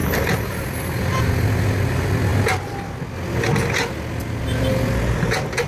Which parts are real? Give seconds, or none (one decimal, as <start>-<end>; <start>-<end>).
1.2-5.7